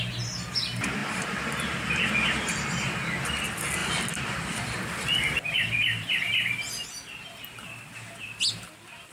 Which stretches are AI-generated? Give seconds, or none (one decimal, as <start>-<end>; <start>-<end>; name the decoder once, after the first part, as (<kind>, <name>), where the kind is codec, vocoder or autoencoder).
1.0-2.1 (vocoder, BigVGAN v2); 3.8-6.3